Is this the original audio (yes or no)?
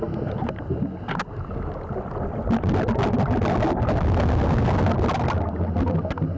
yes